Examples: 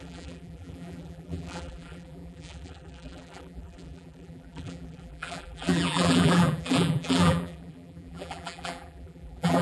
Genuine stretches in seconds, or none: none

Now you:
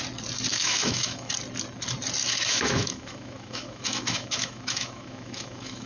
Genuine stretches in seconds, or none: 0.0-0.5; 1.3-2.2

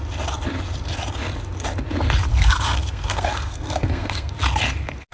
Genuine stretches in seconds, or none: 0.0-2.3; 4.3-5.1